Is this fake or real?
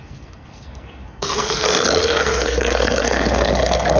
fake